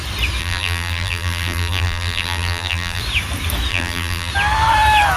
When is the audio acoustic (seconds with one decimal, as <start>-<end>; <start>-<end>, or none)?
0.0-0.4; 3.0-3.7; 4.3-5.2